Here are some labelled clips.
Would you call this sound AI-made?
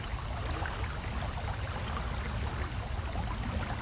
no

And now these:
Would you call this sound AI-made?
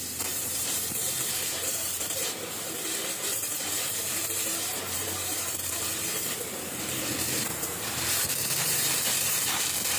yes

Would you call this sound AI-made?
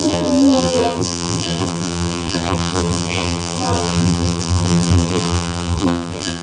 yes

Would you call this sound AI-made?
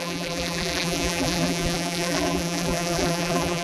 yes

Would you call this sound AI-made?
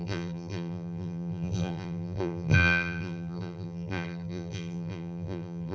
yes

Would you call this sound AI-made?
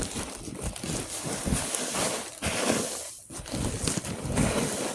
no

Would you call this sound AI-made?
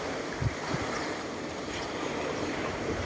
yes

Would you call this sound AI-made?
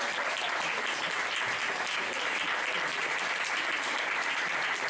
no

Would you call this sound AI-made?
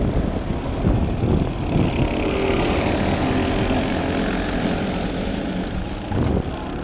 no